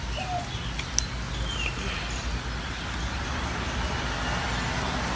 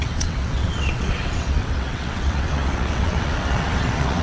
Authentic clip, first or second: first